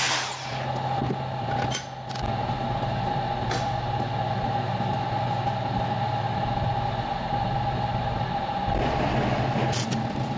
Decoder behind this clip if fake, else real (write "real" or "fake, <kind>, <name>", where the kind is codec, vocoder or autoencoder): real